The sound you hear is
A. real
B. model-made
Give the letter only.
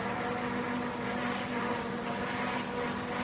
A